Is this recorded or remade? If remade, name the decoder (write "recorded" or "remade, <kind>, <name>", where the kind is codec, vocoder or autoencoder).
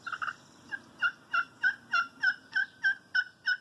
recorded